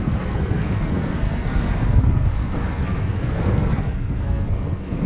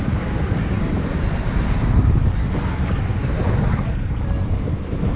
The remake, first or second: first